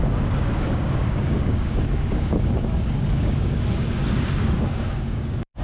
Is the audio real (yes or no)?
no